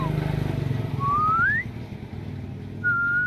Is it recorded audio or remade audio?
recorded